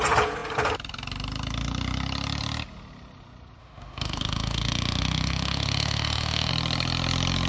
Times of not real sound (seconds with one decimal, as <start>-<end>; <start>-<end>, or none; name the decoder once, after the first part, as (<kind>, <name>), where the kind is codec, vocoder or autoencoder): 3.6-6.5 (autoencoder, DAC-VAE)